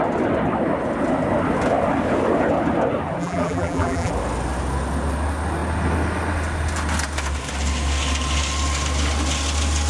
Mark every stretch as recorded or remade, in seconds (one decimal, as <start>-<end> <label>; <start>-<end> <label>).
0.0-3.2 recorded; 3.2-4.1 remade; 4.1-9.9 recorded